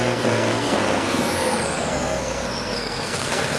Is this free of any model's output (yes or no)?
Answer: no